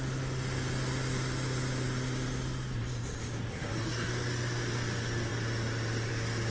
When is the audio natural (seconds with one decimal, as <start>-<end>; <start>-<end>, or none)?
0.0-3.5; 4.1-6.5